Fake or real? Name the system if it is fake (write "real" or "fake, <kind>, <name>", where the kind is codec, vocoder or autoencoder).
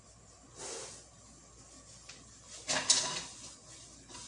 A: real